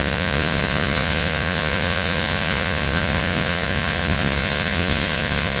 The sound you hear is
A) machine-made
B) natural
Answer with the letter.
A